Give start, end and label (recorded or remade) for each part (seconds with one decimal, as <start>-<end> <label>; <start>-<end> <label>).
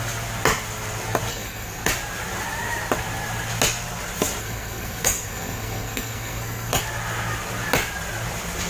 0.0-1.3 recorded; 1.3-1.9 remade; 1.9-4.4 recorded; 4.4-6.8 remade; 6.8-8.7 recorded